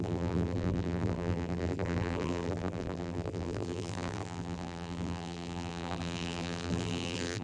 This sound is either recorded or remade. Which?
remade